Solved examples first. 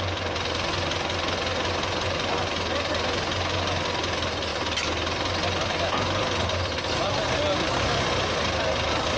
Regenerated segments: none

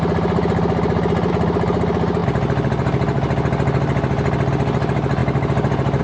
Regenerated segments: none

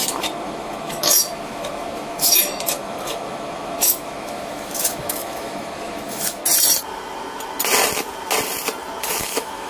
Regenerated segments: 0.0-6.4 (autoencoder, DAC-VAE); 9.0-9.7

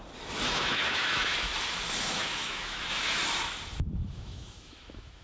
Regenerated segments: 0.5-1.5 (autoencoder, DAC-VAE); 2.0-3.2; 4.1-5.2